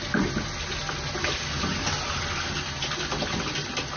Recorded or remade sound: recorded